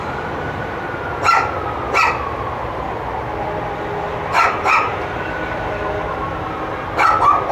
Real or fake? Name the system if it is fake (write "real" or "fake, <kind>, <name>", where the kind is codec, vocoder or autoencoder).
real